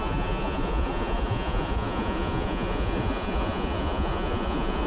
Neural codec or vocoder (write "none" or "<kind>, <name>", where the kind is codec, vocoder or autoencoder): vocoder, Vocos